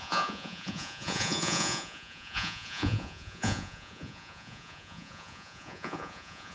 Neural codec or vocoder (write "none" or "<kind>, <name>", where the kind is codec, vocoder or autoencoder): vocoder, Vocos